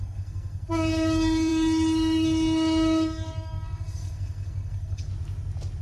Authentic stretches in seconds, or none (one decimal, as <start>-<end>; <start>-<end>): 5.1-5.8